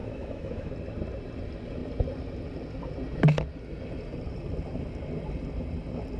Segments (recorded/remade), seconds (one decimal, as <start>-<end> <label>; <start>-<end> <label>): 0.0-0.7 remade; 0.7-6.2 recorded